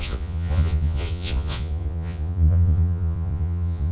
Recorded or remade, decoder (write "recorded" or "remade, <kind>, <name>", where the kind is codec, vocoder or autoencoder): remade, vocoder, Vocos